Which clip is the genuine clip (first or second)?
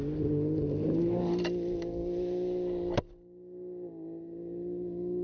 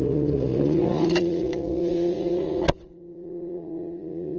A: first